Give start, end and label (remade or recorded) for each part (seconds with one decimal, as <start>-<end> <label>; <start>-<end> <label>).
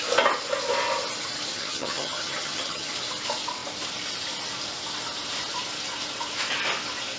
0.0-1.5 recorded; 1.5-2.9 remade; 2.9-7.2 recorded